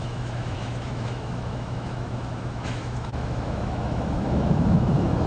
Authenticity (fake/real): fake